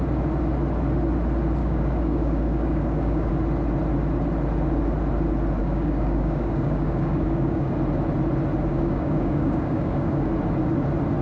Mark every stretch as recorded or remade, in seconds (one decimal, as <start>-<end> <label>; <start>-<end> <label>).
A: 0.0-1.6 recorded; 1.6-3.3 remade; 3.3-5.6 recorded; 5.6-7.7 remade; 7.7-8.7 recorded; 8.7-10.3 remade; 10.3-11.2 recorded